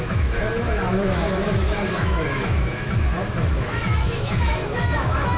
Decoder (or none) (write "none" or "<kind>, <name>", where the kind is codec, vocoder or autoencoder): autoencoder, DAC-VAE